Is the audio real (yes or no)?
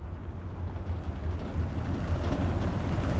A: yes